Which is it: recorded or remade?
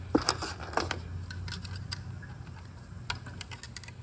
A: recorded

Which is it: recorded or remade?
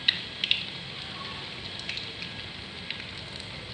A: recorded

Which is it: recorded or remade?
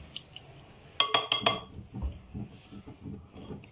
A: recorded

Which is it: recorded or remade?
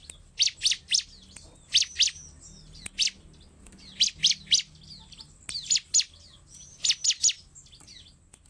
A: recorded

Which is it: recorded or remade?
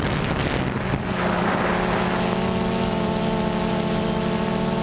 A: recorded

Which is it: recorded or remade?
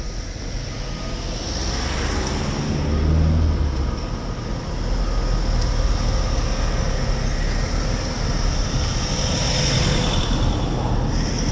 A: recorded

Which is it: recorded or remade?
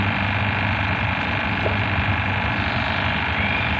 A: recorded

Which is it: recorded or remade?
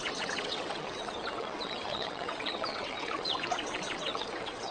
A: remade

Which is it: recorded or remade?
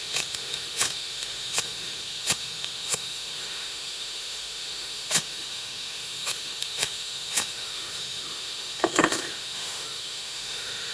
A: remade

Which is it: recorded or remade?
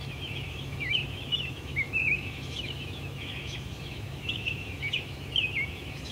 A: remade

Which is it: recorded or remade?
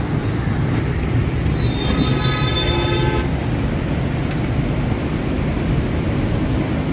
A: recorded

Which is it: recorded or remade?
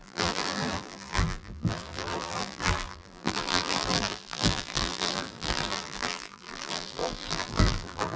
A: remade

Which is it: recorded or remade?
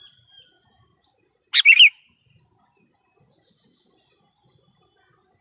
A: recorded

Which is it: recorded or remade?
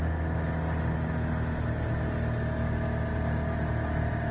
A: recorded